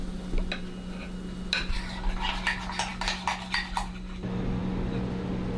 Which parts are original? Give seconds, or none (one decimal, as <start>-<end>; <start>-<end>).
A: 0.0-5.6